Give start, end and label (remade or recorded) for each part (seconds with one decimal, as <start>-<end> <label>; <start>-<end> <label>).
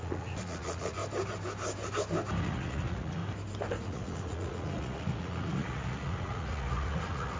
0.0-1.0 remade; 1.0-2.4 recorded; 2.4-3.2 remade; 3.2-3.8 recorded; 3.8-7.4 remade